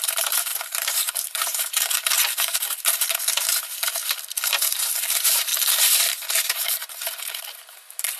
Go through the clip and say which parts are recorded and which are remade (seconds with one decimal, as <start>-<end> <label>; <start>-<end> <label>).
0.0-4.0 remade; 4.0-4.5 recorded; 4.5-5.5 remade; 5.5-6.0 recorded; 6.0-6.8 remade; 6.8-7.7 recorded; 7.7-8.2 remade